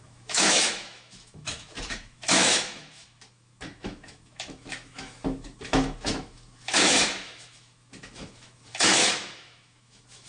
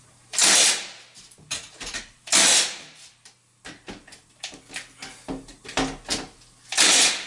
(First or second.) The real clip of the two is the second